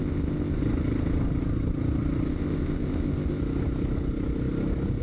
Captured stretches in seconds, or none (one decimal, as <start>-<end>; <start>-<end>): 0.6-2.3; 3.4-5.0